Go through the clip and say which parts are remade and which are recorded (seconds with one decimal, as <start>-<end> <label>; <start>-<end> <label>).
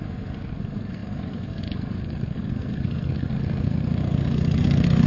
0.0-5.1 remade